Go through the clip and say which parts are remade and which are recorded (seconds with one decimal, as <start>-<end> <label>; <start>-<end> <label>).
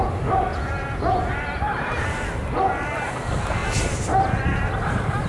0.0-0.5 recorded; 0.5-1.0 remade; 1.0-5.3 recorded